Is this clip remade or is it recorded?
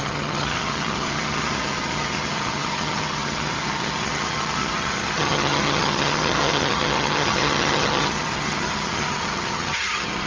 remade